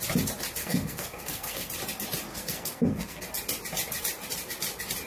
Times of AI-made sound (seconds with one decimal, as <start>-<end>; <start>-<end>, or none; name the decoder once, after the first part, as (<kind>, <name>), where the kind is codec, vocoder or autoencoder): 0.6-1.7 (codec, SNAC); 2.3-3.2